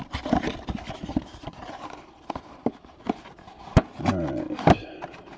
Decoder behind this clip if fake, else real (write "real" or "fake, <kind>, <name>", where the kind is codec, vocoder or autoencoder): fake, vocoder, BigVGAN v2